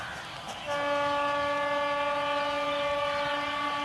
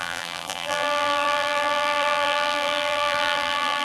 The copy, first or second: second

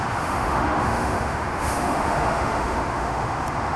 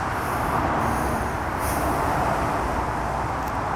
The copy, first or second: first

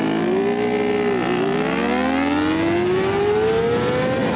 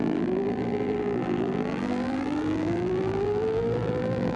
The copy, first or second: second